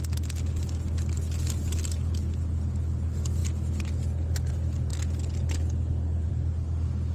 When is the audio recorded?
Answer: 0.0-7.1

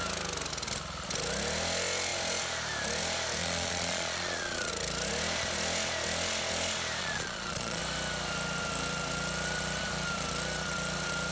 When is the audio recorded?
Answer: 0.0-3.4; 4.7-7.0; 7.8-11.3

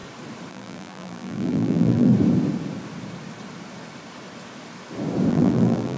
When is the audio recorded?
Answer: 0.0-0.5; 2.1-5.3

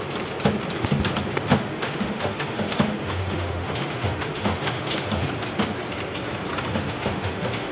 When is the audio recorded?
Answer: 0.0-1.5; 5.3-6.7

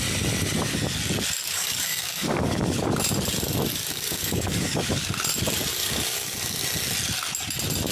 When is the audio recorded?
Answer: 0.0-1.4; 3.0-3.7; 5.1-5.7; 6.6-7.9

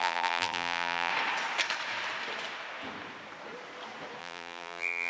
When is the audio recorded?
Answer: 1.1-4.2